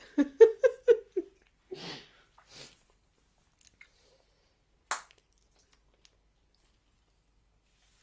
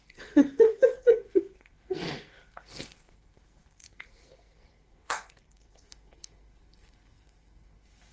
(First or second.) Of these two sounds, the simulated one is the second